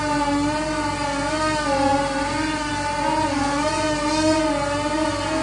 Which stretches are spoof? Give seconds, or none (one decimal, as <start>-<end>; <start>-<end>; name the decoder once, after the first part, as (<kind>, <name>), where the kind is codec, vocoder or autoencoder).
none